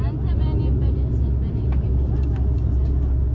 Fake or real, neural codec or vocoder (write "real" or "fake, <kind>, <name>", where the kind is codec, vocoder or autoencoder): real